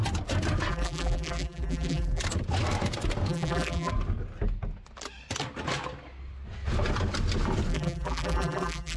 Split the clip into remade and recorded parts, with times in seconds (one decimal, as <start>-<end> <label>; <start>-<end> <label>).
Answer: 0.0-0.7 recorded; 0.7-2.2 remade; 2.2-3.3 recorded; 3.3-3.9 remade; 3.9-7.7 recorded; 7.7-9.0 remade